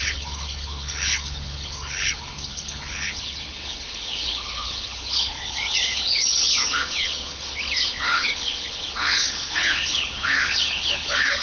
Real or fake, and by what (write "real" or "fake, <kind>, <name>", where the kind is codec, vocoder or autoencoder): fake, codec, HILCodec